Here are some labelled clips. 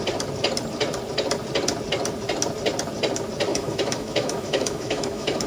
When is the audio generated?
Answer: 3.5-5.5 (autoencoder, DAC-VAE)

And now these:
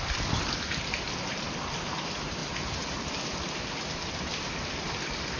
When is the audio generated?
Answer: none

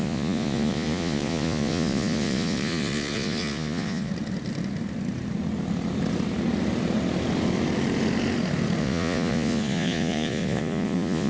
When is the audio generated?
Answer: 0.0-4.1 (vocoder, Vocos); 8.8-11.3

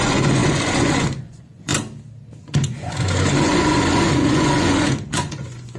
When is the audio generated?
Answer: 0.0-1.7 (vocoder, Vocos); 2.4-5.8

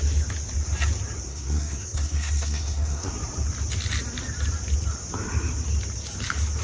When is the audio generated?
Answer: 1.3-3.1 (codec, SNAC)